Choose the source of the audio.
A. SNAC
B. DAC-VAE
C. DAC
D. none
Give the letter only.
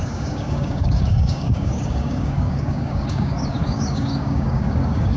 C